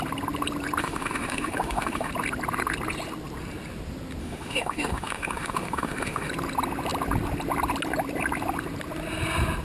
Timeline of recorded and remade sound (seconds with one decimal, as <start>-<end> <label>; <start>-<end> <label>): 0.0-0.8 recorded; 0.8-2.1 remade; 2.1-4.2 recorded; 4.2-6.3 remade; 6.3-9.6 recorded